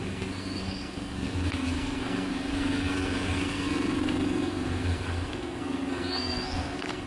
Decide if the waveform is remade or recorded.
remade